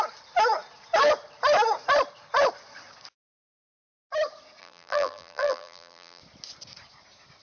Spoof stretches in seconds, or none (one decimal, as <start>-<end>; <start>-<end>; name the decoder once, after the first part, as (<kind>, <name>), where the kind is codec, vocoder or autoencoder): 4.6-6.2 (vocoder, BigVGAN v2)